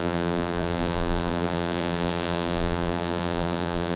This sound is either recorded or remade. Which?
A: remade